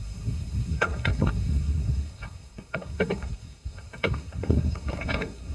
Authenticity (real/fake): fake